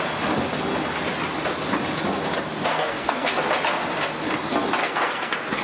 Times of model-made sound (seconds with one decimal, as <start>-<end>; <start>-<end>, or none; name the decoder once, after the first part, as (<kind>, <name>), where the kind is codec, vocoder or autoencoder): 2.7-3.3 (codec, SNAC); 4.8-5.6